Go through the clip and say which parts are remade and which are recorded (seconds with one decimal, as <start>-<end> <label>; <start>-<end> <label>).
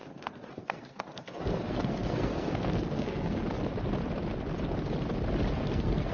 0.0-3.4 remade; 3.4-5.5 recorded; 5.5-6.1 remade